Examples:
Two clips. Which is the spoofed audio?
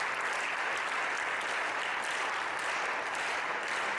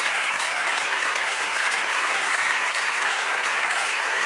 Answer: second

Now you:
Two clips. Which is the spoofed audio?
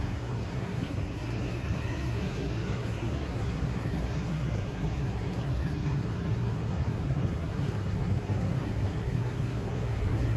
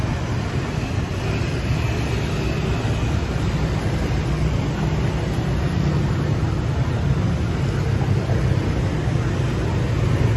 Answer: first